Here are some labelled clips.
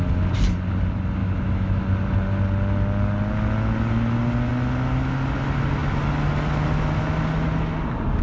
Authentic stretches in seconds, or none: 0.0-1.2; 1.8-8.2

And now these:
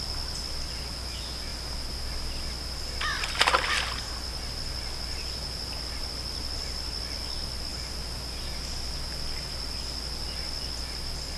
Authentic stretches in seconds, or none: 0.0-11.4

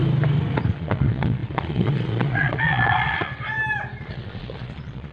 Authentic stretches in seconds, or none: 0.0-0.7; 3.3-4.0